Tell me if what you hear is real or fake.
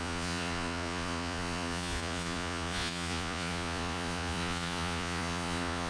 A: fake